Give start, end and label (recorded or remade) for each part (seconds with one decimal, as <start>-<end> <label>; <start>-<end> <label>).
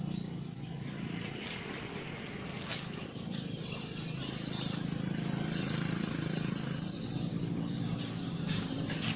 0.0-7.3 recorded; 7.3-8.7 remade; 8.7-9.2 recorded